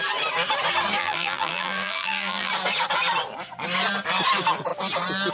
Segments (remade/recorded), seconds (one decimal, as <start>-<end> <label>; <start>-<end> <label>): 0.0-1.0 recorded; 1.0-2.5 remade; 2.5-5.3 recorded